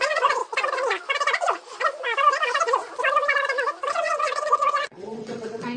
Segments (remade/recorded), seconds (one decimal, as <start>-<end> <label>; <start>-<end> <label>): 0.0-0.4 remade; 0.4-3.9 recorded; 3.9-5.8 remade